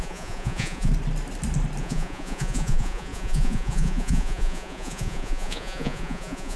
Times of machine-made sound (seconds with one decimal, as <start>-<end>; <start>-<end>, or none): 0.0-0.9; 1.8-6.6